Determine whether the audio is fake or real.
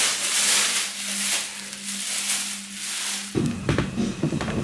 real